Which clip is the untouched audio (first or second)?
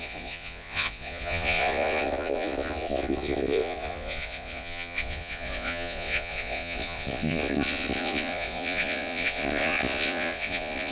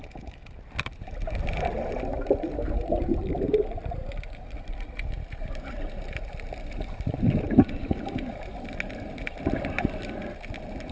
second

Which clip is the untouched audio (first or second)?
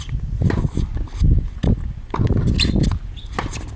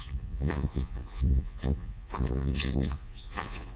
first